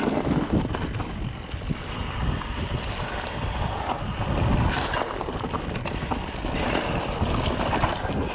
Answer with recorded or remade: recorded